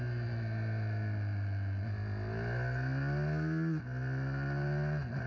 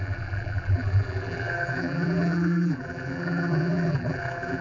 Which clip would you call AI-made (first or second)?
second